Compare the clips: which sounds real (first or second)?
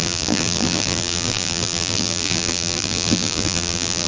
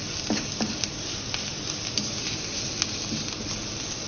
second